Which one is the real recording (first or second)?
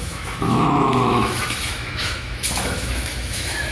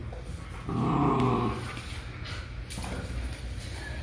second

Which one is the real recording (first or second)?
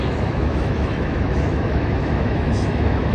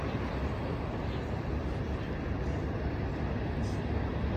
second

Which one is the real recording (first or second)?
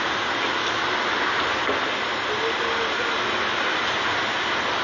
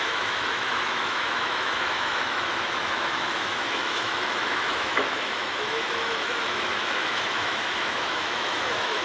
first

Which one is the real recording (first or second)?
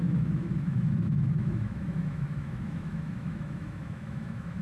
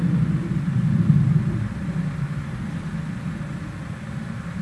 second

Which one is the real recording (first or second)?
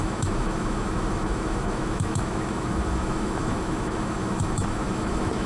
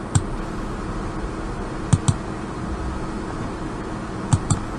second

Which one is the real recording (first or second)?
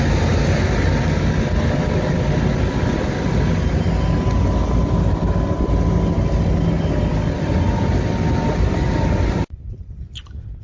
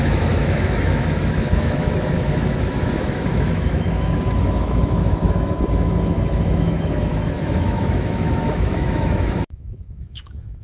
first